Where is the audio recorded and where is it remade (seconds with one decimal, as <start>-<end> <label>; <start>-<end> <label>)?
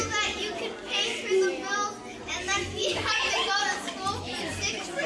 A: 0.0-5.1 recorded